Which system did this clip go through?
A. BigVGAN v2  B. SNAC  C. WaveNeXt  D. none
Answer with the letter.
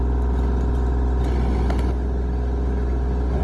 D